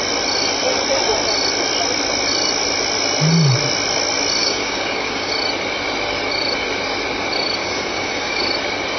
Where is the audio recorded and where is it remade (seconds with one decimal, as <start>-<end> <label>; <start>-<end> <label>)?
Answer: 0.0-4.4 recorded; 4.4-5.3 remade; 5.3-7.6 recorded; 7.6-8.4 remade; 8.4-9.0 recorded